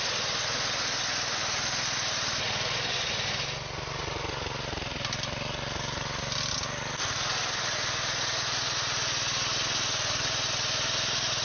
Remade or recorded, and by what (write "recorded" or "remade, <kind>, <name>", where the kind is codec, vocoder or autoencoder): recorded